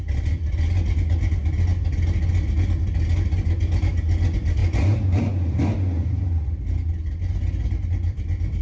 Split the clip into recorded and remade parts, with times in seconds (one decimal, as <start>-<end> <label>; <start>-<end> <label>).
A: 0.0-8.6 recorded